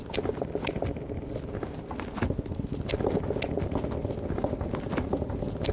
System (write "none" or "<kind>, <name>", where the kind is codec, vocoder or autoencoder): none